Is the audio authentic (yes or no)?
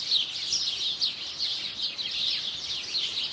yes